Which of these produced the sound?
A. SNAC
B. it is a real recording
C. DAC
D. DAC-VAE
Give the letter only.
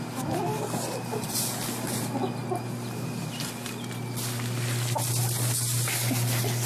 B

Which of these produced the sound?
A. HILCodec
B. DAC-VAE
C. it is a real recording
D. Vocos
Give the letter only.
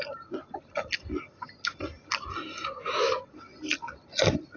C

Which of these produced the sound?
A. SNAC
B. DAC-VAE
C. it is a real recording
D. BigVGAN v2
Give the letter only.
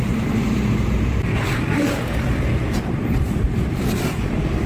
D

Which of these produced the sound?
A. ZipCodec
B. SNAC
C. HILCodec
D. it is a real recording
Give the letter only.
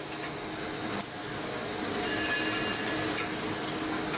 D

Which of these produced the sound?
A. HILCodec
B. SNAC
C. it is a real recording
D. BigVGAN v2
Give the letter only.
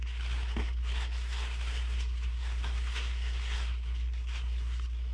B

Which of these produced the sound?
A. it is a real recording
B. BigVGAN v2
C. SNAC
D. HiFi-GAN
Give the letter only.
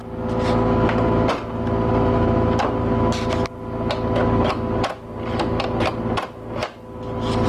A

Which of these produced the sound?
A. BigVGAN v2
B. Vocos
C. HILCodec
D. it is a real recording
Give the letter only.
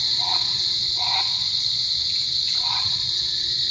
B